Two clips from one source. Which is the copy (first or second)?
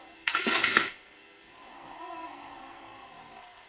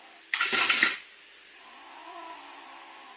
first